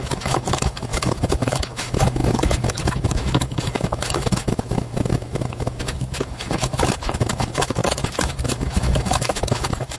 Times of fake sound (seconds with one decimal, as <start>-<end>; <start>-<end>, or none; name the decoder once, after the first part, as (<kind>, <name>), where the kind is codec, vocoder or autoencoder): 0.0-10.0 (autoencoder, DAC-VAE)